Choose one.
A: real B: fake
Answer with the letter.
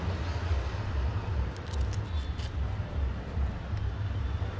A